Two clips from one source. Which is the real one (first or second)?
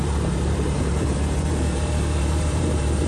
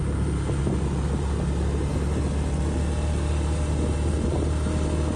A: second